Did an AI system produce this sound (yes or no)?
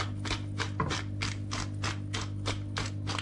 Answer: no